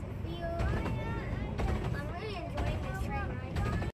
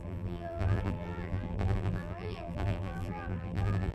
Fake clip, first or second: second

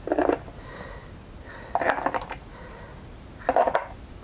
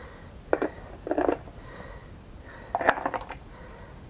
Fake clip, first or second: second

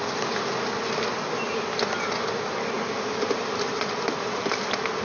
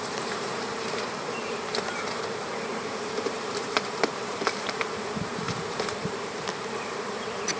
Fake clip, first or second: second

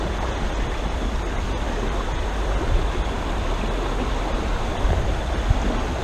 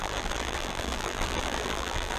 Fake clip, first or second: second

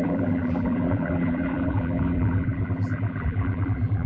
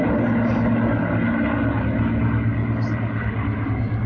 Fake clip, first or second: first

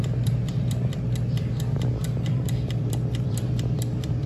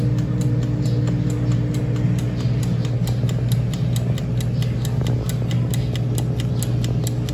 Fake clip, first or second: first